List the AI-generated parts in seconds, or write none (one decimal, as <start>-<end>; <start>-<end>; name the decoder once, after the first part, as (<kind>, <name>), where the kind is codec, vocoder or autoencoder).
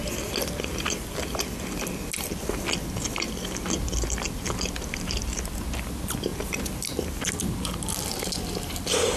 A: none